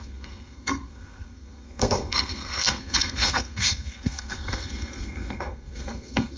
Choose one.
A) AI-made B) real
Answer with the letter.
A